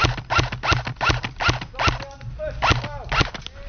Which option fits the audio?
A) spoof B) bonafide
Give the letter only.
B